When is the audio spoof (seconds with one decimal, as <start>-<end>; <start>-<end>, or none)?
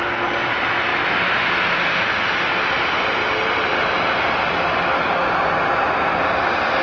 none